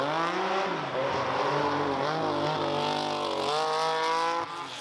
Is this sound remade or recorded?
recorded